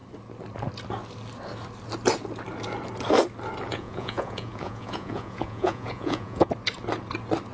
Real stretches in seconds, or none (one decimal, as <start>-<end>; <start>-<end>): 0.0-3.7; 6.5-7.5